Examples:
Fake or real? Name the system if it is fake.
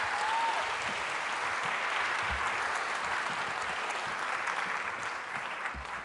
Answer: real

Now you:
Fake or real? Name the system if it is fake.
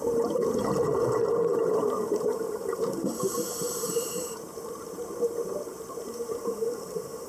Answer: fake, vocoder, BigVGAN v2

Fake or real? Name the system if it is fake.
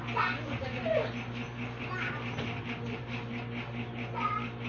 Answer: real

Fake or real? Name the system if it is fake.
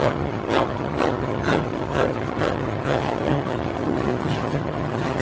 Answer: fake, vocoder, HiFi-GAN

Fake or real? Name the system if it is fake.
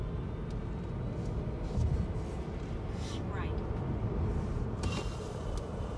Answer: real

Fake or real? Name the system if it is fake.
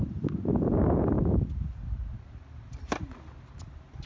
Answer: real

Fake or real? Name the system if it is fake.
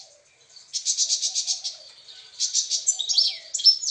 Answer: real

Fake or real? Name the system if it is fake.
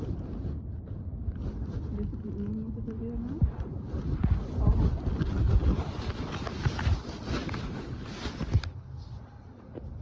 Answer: real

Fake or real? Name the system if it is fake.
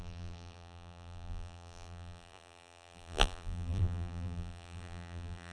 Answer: fake, vocoder, BigVGAN v2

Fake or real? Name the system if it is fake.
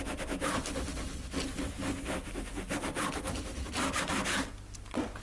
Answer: real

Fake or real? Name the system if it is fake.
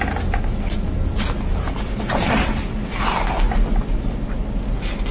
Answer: real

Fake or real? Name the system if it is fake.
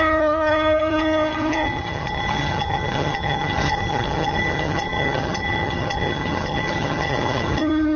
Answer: fake, vocoder, HiFi-GAN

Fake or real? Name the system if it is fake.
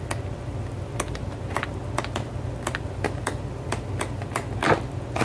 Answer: real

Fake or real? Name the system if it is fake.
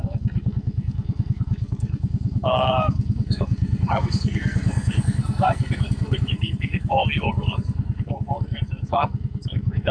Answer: fake, codec, SNAC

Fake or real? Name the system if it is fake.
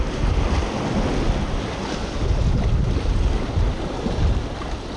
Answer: real